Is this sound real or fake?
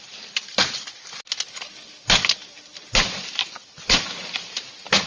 real